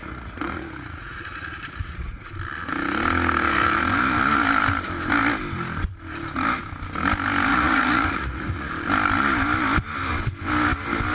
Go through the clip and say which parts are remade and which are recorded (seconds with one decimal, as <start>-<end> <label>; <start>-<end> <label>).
0.0-2.3 remade; 2.3-7.5 recorded; 7.5-8.7 remade; 8.7-11.1 recorded